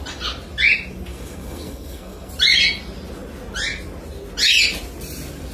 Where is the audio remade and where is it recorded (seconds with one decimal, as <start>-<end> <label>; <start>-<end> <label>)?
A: 0.0-1.1 recorded; 1.1-2.3 remade; 2.3-5.5 recorded